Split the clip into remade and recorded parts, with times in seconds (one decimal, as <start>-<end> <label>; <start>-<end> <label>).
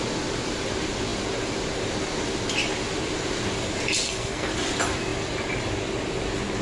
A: 0.0-4.0 recorded; 4.0-4.5 remade; 4.5-6.6 recorded